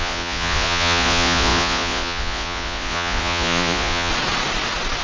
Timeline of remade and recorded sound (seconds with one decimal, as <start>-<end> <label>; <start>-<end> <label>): 0.0-4.1 remade; 4.1-5.0 recorded